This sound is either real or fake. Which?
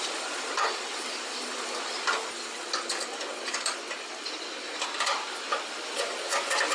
real